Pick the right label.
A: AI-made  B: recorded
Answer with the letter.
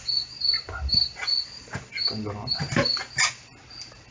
B